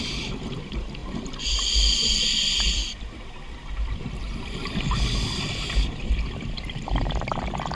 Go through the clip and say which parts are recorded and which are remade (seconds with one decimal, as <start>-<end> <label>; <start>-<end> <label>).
0.0-7.7 remade